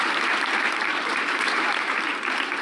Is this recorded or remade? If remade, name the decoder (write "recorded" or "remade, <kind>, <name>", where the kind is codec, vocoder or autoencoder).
remade, vocoder, BigVGAN v2